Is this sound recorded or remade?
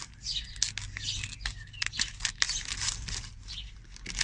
recorded